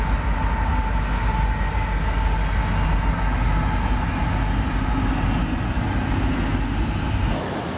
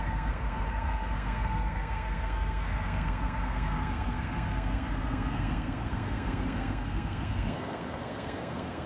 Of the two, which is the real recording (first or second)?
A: first